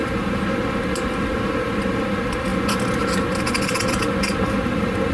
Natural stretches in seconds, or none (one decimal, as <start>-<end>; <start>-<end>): 0.0-5.1